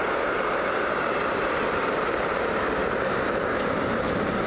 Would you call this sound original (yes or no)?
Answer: no